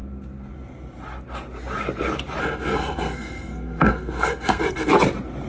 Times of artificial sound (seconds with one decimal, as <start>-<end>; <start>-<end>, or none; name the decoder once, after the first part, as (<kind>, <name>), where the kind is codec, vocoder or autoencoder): 2.4-4.9 (codec, SNAC)